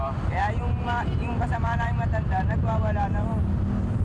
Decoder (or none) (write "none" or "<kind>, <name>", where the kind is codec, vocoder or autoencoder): vocoder, BigVGAN v2